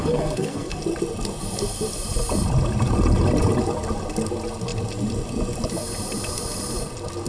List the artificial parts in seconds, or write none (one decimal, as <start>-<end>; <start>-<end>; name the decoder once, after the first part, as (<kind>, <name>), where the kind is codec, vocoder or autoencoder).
0.0-0.8 (codec, SNAC)